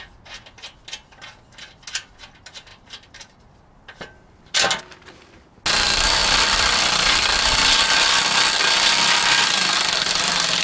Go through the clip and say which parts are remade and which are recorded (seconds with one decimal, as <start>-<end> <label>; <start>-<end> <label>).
0.0-2.7 recorded; 2.7-4.8 remade; 4.8-10.6 recorded